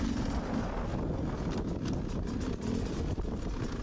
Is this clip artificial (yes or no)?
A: no